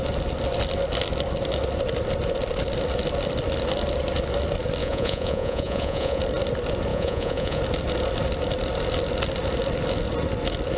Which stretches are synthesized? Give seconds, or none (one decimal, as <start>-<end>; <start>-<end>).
4.8-6.2; 6.9-7.6